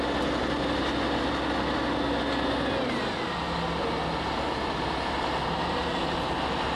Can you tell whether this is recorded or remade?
recorded